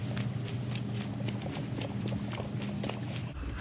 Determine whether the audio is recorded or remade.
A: recorded